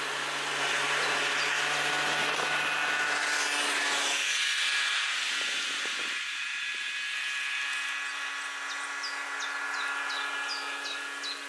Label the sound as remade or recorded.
recorded